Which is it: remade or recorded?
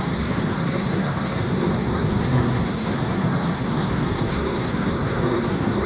remade